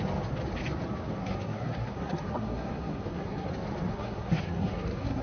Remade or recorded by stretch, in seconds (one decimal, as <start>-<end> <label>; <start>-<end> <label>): 0.0-1.2 recorded; 1.2-3.5 remade; 3.5-3.9 recorded; 3.9-5.2 remade